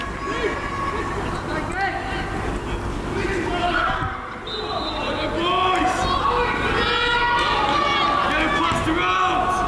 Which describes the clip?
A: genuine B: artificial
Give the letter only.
A